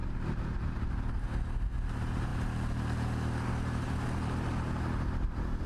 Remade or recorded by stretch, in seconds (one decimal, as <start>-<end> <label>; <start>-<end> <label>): 0.0-5.7 recorded